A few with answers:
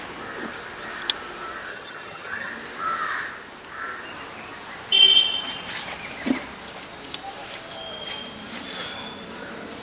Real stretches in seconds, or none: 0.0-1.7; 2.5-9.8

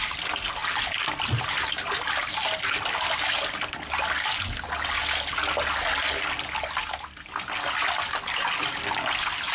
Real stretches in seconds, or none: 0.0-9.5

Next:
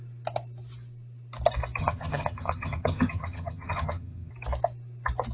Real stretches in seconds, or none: 0.0-1.8; 4.3-5.3

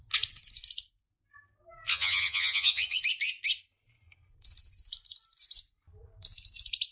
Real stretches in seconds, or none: 0.0-1.9; 3.0-6.9

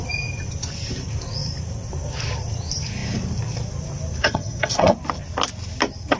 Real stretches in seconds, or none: 0.0-4.2; 4.9-6.2